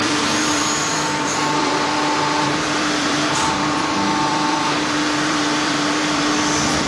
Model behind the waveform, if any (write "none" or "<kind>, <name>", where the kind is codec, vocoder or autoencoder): vocoder, BigVGAN v2